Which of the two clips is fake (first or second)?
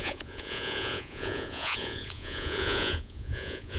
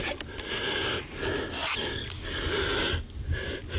first